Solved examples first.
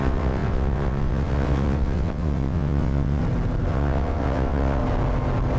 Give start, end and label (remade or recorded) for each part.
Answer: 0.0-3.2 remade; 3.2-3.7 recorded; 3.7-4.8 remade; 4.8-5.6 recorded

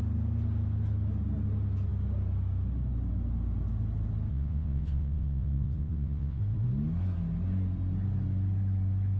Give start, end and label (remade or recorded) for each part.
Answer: 0.0-4.3 recorded; 4.3-6.4 remade; 6.4-9.2 recorded